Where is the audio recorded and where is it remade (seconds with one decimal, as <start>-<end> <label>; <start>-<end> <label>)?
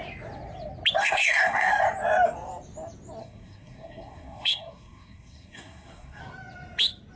0.0-1.0 recorded; 1.0-1.7 remade; 1.7-3.2 recorded; 3.2-6.2 remade; 6.2-7.2 recorded